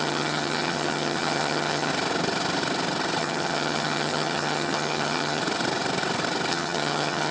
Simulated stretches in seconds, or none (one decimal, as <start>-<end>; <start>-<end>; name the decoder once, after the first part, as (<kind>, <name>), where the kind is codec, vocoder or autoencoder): 0.0-1.9 (vocoder, HiFi-GAN); 3.2-5.4; 6.5-7.3